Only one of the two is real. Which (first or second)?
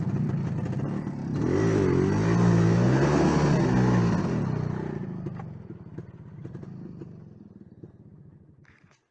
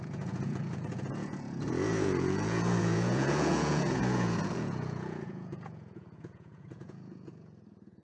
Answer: first